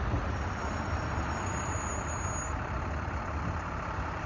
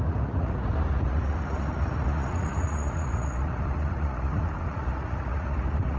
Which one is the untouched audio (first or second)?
first